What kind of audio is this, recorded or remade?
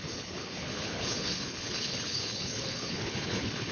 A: remade